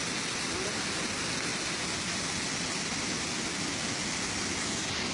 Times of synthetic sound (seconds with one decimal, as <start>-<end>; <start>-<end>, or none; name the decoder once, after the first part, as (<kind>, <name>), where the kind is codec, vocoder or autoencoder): none